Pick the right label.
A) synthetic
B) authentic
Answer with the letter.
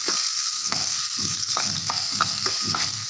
A